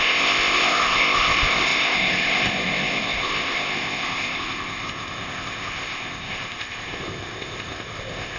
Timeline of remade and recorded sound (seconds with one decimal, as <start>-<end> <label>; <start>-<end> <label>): 0.0-8.4 remade